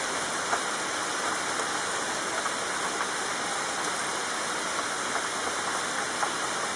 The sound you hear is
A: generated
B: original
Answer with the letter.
B